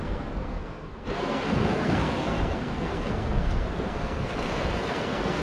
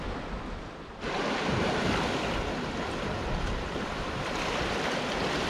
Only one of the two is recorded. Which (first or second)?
second